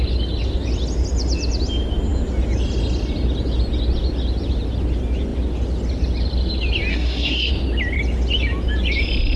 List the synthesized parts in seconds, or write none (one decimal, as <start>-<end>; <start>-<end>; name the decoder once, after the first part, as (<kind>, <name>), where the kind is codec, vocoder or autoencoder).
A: 6.9-7.5 (codec, SNAC)